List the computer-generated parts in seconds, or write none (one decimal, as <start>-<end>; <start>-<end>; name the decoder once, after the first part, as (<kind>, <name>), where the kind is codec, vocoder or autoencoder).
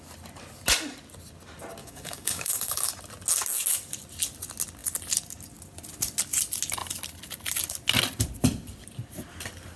1.8-2.9 (codec, DAC)